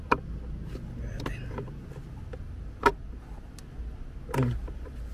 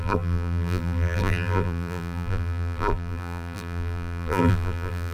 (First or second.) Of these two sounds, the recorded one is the first